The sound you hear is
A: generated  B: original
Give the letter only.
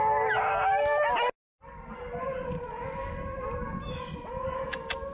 B